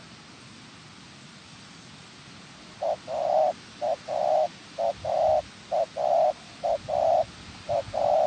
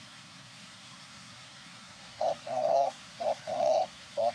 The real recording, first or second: first